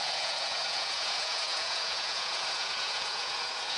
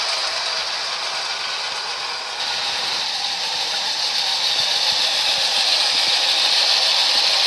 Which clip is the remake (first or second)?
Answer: first